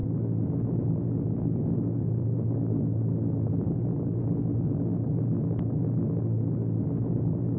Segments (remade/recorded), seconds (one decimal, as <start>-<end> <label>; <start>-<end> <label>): 0.0-7.6 recorded